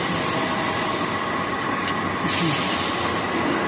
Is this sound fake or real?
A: real